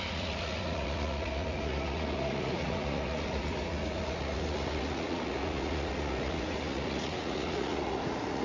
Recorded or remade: remade